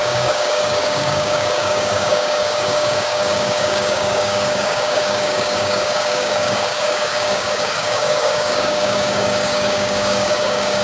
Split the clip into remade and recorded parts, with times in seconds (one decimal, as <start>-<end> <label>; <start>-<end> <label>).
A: 0.0-10.8 remade